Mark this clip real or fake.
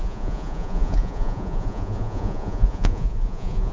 fake